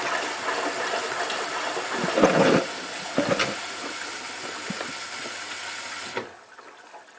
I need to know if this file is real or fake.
real